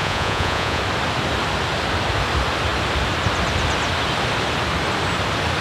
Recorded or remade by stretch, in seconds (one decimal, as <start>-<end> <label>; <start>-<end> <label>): 0.0-0.8 remade; 0.8-5.6 recorded